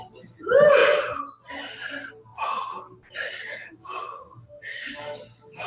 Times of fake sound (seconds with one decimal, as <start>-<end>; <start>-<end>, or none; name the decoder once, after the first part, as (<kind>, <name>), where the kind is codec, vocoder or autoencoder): 3.5-5.7 (codec, DAC)